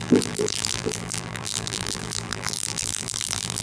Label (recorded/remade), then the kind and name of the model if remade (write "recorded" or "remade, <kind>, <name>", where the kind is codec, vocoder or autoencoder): remade, vocoder, BigVGAN v2